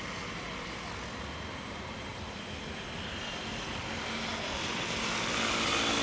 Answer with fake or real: real